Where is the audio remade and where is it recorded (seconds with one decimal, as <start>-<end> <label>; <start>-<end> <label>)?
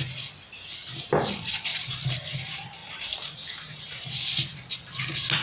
0.0-1.7 recorded; 1.7-2.3 remade; 2.3-2.8 recorded; 2.8-4.1 remade; 4.1-5.4 recorded